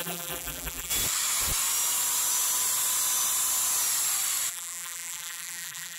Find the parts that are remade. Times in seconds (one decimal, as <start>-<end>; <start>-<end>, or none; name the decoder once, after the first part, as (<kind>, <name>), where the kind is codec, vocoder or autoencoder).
0.0-0.9 (vocoder, BigVGAN v2); 4.5-6.0